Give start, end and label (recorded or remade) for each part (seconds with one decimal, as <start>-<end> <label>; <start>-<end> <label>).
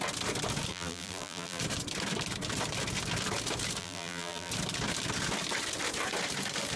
0.0-0.7 recorded; 0.7-1.6 remade; 1.6-3.8 recorded; 3.8-4.5 remade; 4.5-6.8 recorded